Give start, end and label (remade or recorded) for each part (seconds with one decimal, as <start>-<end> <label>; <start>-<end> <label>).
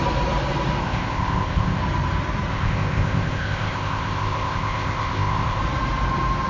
0.0-0.8 recorded; 0.8-1.8 remade; 1.8-2.5 recorded; 2.5-5.6 remade; 5.6-6.5 recorded